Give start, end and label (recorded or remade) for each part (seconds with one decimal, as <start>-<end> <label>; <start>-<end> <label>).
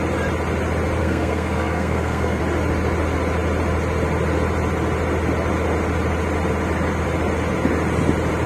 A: 0.0-1.0 recorded; 1.0-2.4 remade; 2.4-8.5 recorded